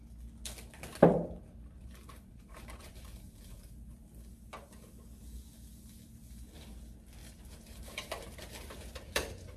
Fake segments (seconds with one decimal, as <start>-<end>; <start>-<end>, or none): 1.1-4.0; 7.2-9.6